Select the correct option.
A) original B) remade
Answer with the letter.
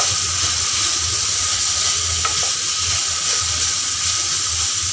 A